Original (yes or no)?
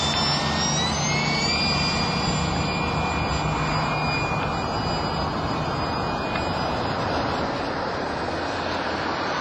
yes